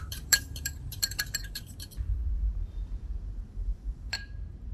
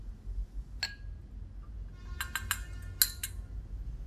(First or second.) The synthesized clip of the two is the first